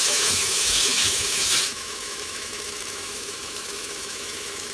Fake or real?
fake